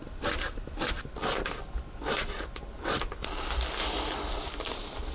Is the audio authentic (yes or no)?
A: yes